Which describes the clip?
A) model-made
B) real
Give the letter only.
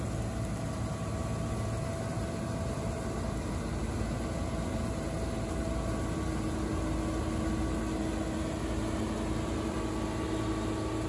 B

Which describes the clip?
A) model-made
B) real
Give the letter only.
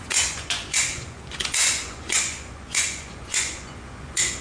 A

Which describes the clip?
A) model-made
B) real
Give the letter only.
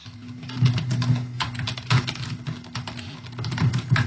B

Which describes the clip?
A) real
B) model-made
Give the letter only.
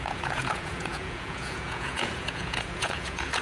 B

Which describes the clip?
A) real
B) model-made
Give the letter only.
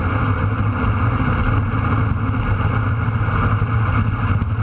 A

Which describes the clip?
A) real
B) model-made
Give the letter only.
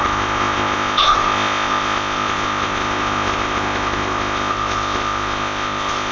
B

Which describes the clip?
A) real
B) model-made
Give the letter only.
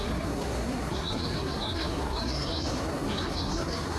B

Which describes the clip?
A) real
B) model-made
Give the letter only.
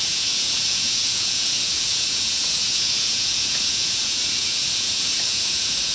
B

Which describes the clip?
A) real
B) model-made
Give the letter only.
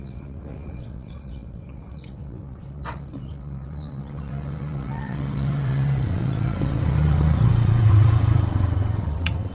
B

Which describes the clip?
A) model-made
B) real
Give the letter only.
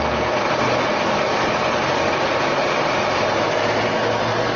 B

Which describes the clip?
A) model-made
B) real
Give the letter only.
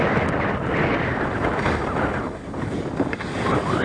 B